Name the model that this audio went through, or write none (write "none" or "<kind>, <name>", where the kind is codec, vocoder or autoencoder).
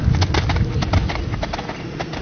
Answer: none